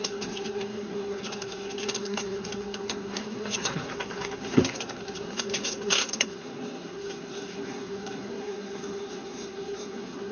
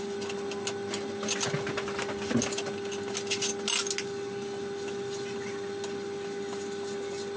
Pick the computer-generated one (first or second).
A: first